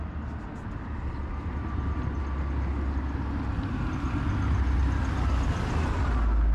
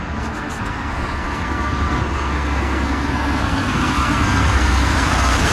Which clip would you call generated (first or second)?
second